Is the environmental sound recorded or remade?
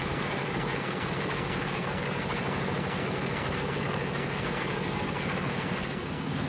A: remade